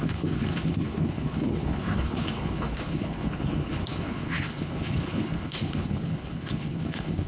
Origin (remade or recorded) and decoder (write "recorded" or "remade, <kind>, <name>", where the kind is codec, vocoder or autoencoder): remade, codec, HILCodec